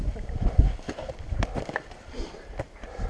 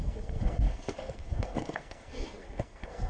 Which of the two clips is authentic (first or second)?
first